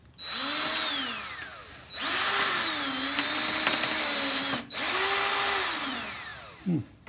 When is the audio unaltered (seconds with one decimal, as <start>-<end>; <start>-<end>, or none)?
0.0-7.1